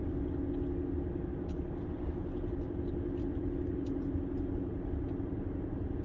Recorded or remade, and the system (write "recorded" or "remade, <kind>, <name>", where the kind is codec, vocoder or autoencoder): recorded